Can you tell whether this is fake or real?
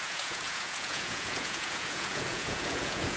fake